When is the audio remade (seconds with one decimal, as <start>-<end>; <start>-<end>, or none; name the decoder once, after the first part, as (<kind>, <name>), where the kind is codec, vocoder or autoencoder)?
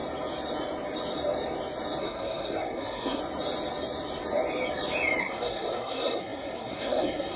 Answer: 2.0-3.2 (codec, SNAC); 5.2-7.4